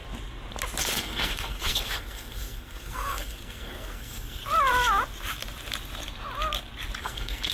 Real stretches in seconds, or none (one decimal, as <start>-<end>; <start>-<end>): 0.0-0.8; 4.4-7.0